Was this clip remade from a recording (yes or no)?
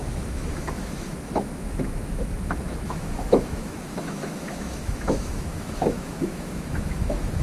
yes